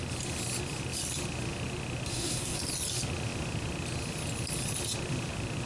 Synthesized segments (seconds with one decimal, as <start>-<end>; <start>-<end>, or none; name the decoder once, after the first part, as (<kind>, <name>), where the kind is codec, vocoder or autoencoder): 2.1-2.6 (codec, SNAC)